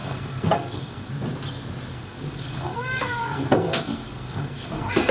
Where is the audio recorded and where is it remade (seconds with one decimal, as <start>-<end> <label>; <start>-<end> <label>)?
0.0-1.1 remade; 1.1-1.9 recorded; 1.9-5.1 remade